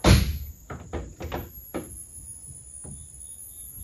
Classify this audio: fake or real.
real